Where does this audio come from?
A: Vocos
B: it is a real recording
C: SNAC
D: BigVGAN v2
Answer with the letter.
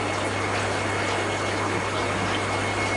B